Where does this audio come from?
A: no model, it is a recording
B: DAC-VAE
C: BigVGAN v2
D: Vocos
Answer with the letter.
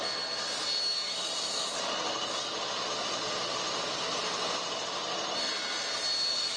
A